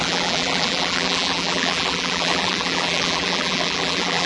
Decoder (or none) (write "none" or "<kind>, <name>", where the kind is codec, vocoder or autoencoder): vocoder, BigVGAN v2